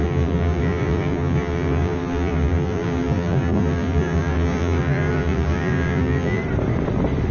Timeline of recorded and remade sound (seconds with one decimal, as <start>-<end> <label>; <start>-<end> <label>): 0.0-6.4 remade; 6.4-7.3 recorded